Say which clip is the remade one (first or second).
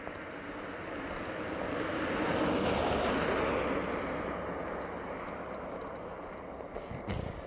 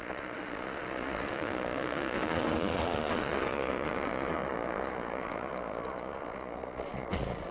second